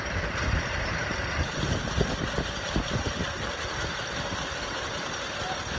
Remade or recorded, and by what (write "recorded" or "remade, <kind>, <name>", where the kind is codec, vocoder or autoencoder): recorded